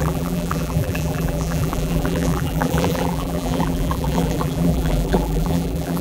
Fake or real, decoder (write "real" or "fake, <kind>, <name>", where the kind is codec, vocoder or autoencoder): fake, vocoder, BigVGAN v2